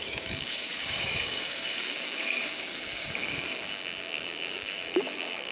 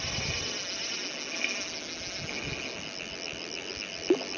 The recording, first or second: second